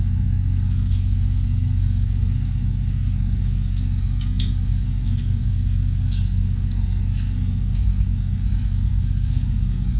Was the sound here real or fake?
fake